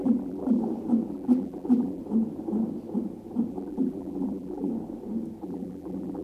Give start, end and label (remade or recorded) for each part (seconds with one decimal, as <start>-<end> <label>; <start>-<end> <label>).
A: 0.0-0.6 remade; 0.6-1.1 recorded; 1.1-2.0 remade; 2.0-3.5 recorded; 3.5-4.7 remade; 4.7-5.4 recorded; 5.4-6.2 remade